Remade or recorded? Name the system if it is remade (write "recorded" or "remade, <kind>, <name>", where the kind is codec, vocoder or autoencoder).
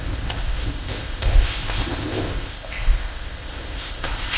remade, codec, ZipCodec